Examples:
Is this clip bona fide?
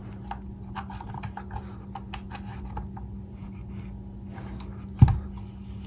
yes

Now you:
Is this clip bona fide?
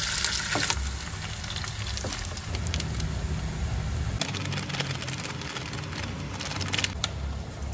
yes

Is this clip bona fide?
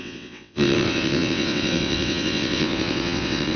no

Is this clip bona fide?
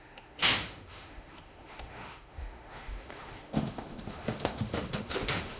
no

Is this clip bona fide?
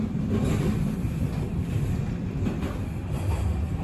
yes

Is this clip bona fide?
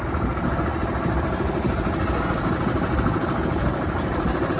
yes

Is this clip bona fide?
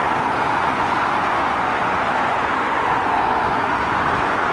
no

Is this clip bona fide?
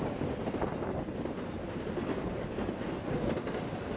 yes